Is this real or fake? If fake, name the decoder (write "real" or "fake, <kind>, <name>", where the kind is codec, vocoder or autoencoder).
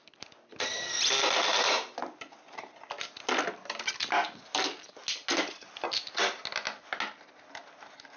real